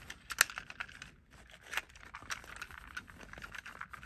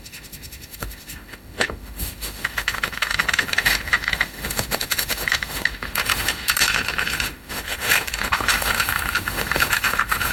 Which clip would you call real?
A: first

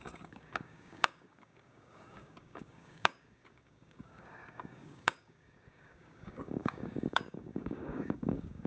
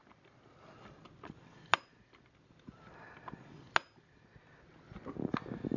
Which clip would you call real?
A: second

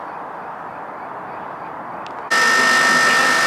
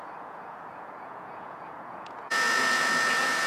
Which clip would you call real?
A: first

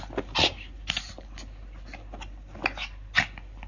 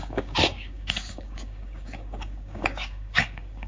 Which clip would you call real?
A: first